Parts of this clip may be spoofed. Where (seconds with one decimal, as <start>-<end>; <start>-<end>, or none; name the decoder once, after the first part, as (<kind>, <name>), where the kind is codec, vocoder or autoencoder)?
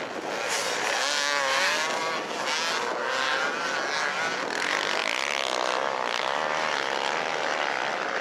5.0-6.2 (vocoder, BigVGAN v2)